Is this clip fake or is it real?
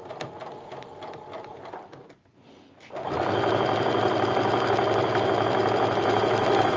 real